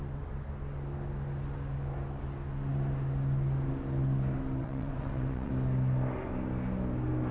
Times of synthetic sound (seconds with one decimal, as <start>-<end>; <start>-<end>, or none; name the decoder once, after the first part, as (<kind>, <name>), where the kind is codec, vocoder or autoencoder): 4.6-5.5 (vocoder, WaveNeXt)